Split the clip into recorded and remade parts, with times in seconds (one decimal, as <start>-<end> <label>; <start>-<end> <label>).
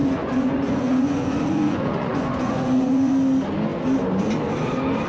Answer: 0.0-3.1 remade; 3.1-5.1 recorded